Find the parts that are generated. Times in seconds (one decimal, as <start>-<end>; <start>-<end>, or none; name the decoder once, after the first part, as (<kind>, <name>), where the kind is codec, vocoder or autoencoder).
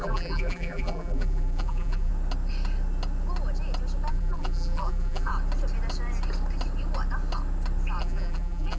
0.0-2.1 (vocoder, BigVGAN v2); 4.1-5.3; 8.0-8.8